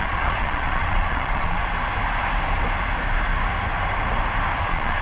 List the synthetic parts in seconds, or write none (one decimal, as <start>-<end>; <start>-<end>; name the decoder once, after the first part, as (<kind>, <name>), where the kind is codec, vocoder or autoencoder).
0.0-1.6 (vocoder, Vocos); 4.6-5.0